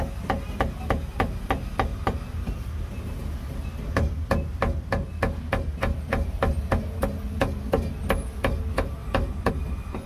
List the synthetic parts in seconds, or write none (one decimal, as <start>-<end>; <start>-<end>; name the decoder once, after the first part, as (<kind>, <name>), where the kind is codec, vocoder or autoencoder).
none